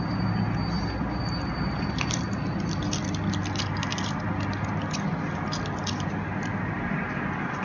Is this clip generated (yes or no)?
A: no